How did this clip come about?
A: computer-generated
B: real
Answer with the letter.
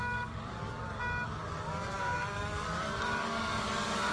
A